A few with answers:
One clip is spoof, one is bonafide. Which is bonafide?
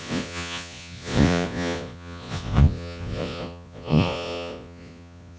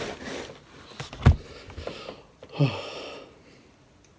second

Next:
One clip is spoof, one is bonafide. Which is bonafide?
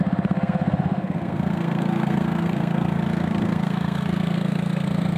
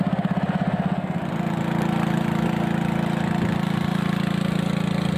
second